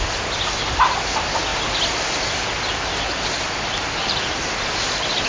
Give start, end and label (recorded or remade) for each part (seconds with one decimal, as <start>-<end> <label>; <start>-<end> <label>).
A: 0.0-5.3 recorded